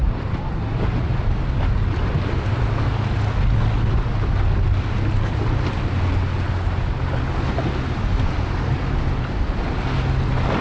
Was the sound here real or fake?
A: real